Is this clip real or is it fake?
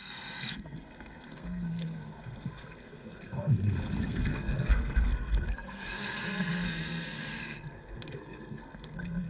fake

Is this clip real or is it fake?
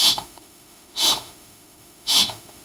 fake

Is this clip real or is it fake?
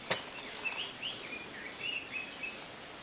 real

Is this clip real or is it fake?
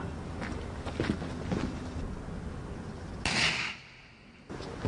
real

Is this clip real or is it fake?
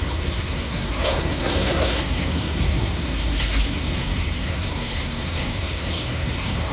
fake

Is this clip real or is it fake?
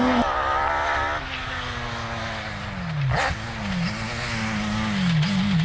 real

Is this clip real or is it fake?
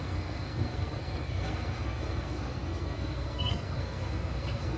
fake